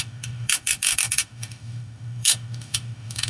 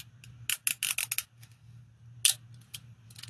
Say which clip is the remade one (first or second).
first